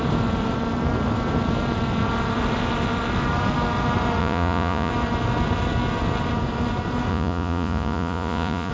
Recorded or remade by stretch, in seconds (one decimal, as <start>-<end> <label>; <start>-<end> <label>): 0.0-4.2 recorded; 4.2-4.9 remade; 4.9-7.1 recorded; 7.1-8.7 remade